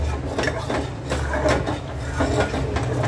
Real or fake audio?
real